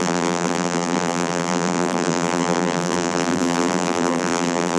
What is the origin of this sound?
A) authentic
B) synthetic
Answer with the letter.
B